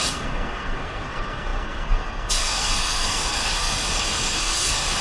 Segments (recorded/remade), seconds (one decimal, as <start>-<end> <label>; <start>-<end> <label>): 0.0-5.0 remade